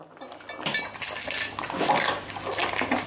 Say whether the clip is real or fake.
real